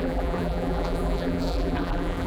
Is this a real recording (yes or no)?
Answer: no